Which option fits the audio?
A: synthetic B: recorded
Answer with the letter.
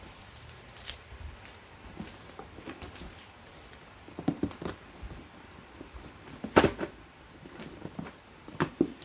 A